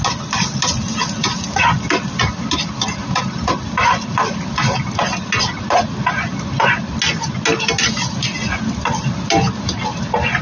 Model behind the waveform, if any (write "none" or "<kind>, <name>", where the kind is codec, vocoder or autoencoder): none